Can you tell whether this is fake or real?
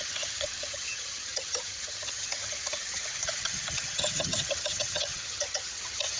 fake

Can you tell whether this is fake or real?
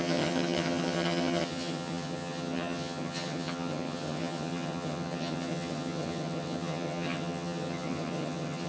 fake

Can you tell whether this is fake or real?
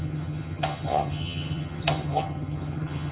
fake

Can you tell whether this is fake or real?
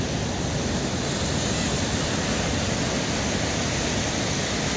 real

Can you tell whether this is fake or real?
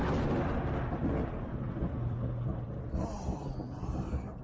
real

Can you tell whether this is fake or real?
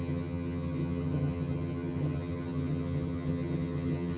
fake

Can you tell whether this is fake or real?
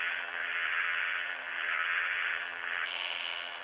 fake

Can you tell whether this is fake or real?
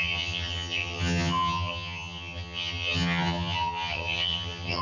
fake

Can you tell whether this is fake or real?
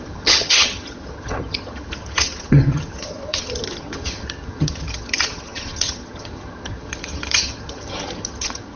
fake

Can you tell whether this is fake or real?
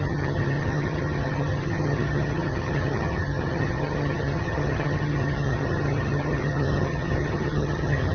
fake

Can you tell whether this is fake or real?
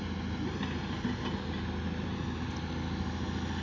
real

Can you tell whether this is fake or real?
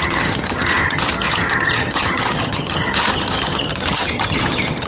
fake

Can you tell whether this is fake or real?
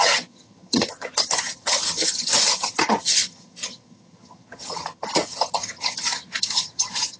fake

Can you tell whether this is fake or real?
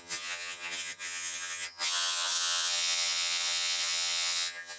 fake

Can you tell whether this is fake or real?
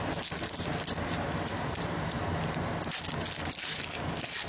real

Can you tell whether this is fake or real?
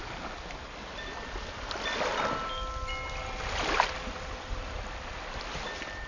real